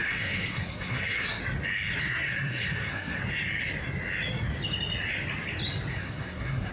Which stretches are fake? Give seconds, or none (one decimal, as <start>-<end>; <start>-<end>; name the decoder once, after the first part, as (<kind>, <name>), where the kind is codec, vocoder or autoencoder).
0.0-1.4 (codec, SNAC); 2.0-3.2; 5.9-6.7